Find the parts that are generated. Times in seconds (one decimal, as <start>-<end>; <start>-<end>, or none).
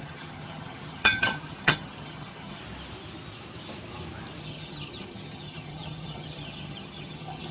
0.0-2.6; 4.4-7.5